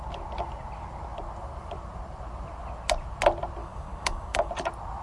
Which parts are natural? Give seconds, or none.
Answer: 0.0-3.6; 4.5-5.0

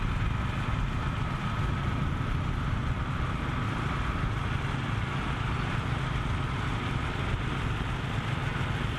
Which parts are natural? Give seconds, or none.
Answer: 0.0-9.0